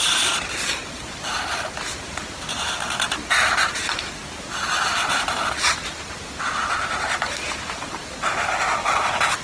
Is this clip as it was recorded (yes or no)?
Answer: yes